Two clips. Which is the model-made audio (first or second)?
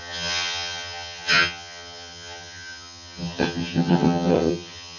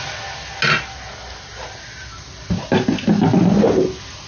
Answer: first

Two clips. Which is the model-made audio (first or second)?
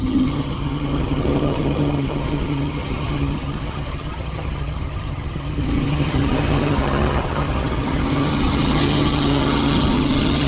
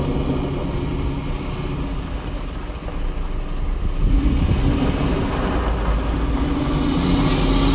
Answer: first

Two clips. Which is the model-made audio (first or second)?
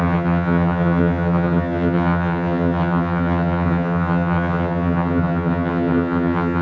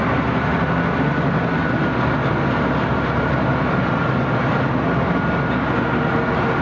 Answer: first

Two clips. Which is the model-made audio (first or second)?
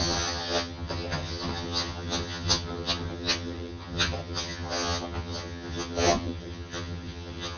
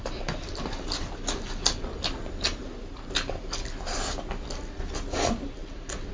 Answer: first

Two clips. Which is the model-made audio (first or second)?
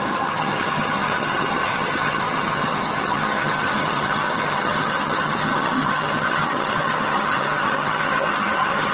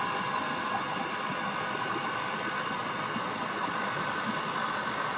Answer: first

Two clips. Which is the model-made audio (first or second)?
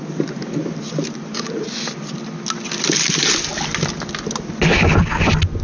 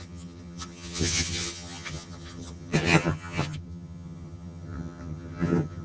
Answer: second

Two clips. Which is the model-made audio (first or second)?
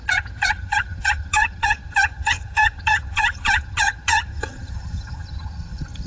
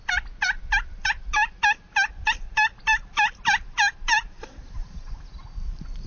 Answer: first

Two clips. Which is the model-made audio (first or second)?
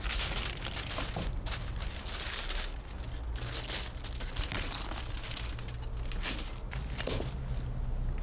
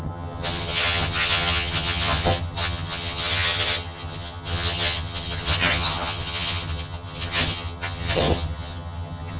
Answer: second